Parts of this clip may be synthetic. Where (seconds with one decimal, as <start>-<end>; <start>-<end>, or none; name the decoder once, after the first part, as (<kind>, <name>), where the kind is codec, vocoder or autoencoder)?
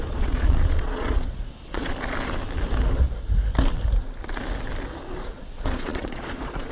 0.0-1.9 (vocoder, Vocos); 5.2-6.7